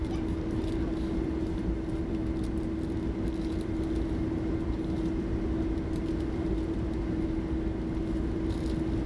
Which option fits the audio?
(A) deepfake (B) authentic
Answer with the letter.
B